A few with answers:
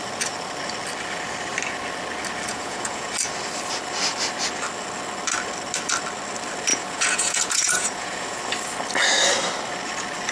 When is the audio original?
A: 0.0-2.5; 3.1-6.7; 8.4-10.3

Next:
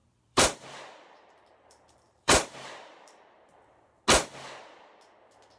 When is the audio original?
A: 3.4-5.6

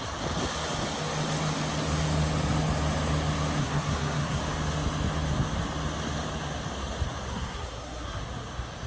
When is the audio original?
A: 0.0-3.6; 4.4-7.3; 8.2-8.9

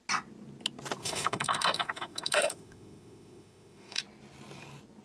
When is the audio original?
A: 0.0-1.0; 4.0-5.0

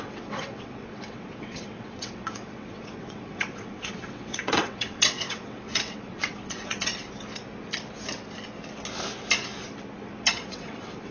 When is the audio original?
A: 6.9-10.0